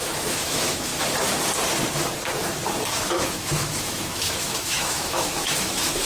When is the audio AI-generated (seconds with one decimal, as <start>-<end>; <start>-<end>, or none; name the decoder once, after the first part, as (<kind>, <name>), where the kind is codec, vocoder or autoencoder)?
0.0-0.9 (autoencoder, DAC-VAE); 2.9-6.0

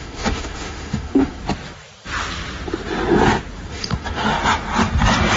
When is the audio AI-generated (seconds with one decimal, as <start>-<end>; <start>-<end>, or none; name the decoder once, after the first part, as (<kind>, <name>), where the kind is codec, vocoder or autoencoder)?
0.0-1.4 (autoencoder, DAC-VAE); 3.7-4.4

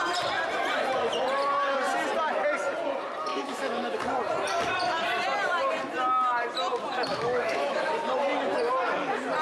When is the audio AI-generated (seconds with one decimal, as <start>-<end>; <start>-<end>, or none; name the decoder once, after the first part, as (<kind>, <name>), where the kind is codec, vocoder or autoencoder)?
3.3-4.0 (autoencoder, DAC-VAE); 7.1-7.9

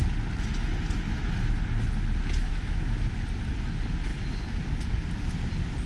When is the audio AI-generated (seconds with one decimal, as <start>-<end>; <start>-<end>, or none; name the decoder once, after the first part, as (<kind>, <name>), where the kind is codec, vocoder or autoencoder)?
2.5-3.0 (autoencoder, DAC-VAE)